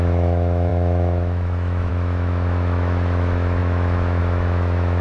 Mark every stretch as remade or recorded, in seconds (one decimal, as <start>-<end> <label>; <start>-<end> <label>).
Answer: 0.0-5.0 remade